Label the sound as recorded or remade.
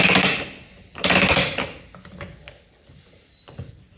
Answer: recorded